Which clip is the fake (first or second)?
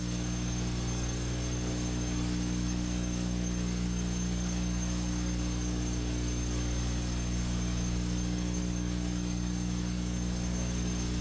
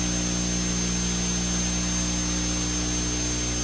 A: first